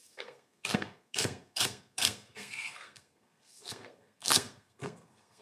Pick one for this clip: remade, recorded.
remade